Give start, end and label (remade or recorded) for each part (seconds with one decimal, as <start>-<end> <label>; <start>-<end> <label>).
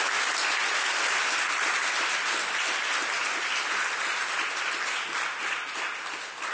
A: 0.0-0.6 recorded; 0.6-4.5 remade; 4.5-6.5 recorded